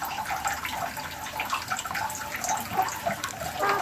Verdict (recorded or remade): recorded